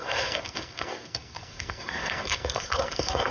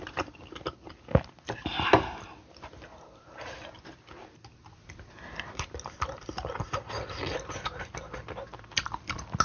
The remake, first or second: first